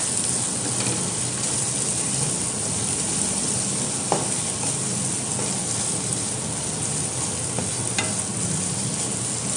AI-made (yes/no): no